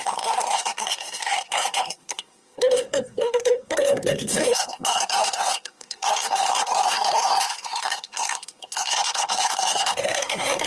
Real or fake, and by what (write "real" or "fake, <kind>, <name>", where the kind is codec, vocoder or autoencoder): fake, codec, SNAC